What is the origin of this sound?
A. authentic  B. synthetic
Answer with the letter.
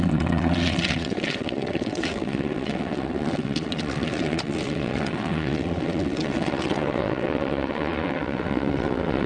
B